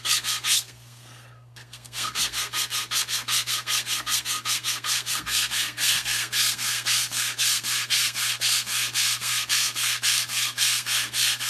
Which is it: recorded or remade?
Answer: remade